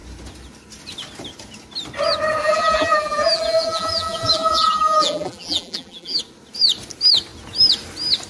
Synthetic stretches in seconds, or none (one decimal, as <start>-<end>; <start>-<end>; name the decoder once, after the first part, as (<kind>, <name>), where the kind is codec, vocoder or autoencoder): 2.4-6.2 (vocoder, BigVGAN v2)